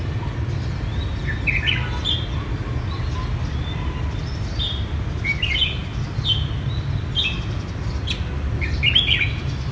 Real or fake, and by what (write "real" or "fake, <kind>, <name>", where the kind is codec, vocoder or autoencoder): real